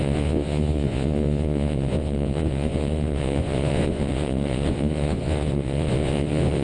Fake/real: fake